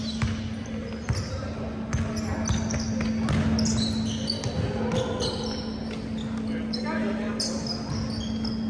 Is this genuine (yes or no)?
yes